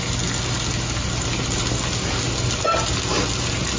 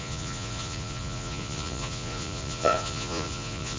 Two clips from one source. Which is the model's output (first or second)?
second